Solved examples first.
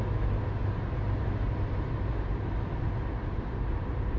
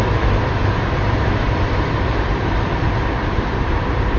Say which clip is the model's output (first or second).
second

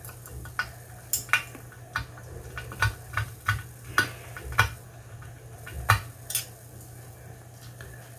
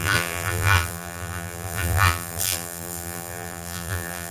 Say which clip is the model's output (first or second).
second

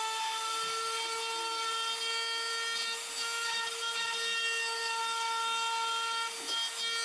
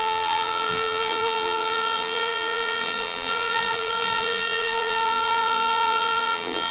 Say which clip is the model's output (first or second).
second